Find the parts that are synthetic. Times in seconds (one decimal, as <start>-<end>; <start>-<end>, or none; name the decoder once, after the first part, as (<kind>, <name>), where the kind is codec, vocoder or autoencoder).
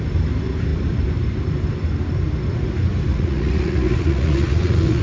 3.1-5.0 (vocoder, Vocos)